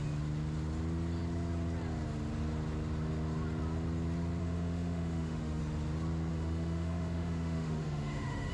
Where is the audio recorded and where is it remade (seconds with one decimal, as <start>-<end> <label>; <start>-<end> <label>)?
0.0-4.4 recorded; 4.4-5.6 remade; 5.6-6.3 recorded; 6.3-8.5 remade